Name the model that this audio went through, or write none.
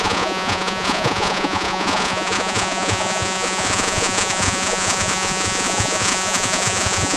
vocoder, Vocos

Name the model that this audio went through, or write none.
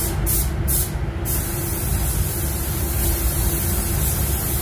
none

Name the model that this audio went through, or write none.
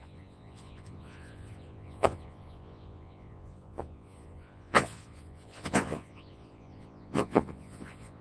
vocoder, Vocos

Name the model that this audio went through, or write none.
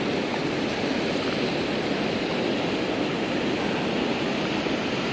none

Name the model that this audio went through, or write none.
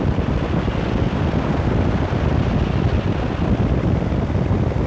none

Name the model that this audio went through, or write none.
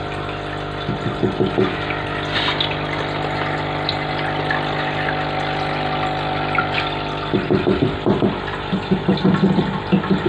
none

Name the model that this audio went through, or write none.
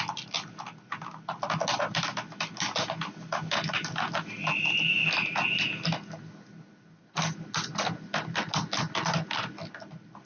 none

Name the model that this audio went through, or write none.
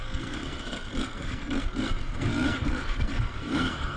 codec, SNAC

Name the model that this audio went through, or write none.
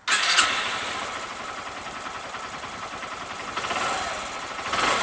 none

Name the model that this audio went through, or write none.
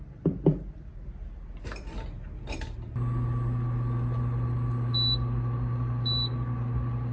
none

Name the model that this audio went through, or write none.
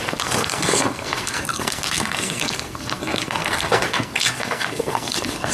codec, SNAC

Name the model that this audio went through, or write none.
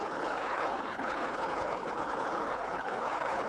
codec, HILCodec